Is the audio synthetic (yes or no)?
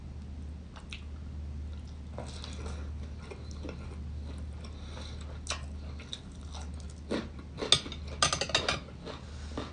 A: no